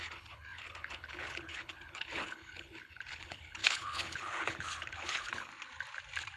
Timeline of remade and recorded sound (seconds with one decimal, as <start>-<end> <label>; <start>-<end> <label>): 0.0-5.5 remade; 5.5-6.4 recorded